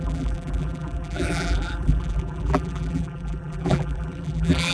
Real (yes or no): no